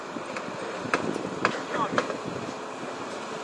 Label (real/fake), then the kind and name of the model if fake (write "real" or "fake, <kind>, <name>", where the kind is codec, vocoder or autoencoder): real